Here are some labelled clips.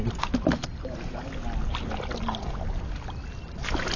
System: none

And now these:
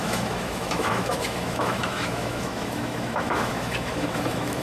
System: autoencoder, DAC-VAE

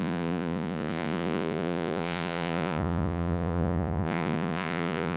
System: vocoder, Vocos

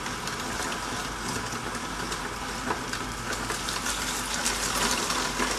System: none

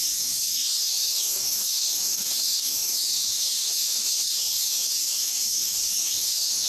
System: codec, DAC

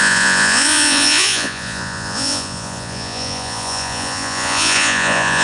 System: vocoder, Vocos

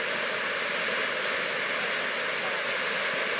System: none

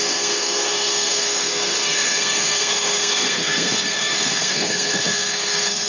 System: codec, SNAC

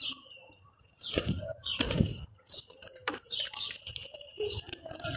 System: vocoder, BigVGAN v2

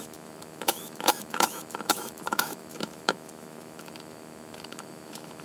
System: autoencoder, DAC-VAE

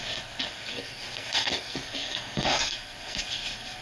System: codec, SNAC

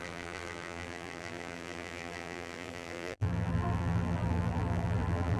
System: vocoder, BigVGAN v2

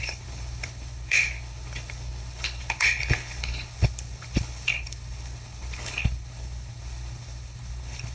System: codec, HILCodec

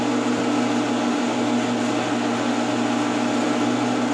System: none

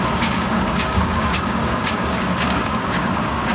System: codec, DAC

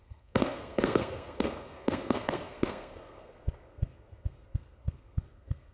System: codec, SNAC